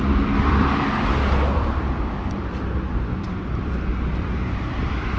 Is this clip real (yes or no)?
no